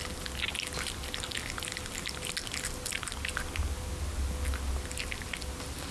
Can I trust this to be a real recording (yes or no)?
yes